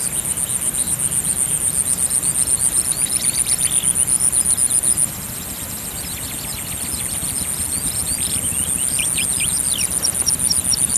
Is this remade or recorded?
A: recorded